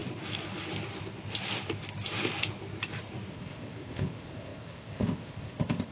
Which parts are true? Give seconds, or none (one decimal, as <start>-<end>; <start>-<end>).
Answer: 0.0-3.3